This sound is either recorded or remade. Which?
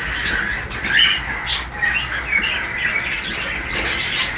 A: recorded